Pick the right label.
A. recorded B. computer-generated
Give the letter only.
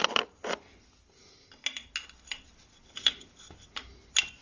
A